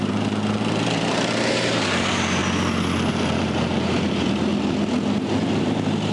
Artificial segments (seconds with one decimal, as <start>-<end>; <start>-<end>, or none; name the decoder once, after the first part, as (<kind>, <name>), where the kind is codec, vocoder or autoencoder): 0.0-2.4 (vocoder, BigVGAN v2); 3.1-4.5; 5.6-6.1